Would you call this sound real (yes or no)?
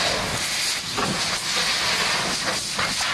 yes